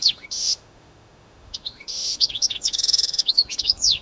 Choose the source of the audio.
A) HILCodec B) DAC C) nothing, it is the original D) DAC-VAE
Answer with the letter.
D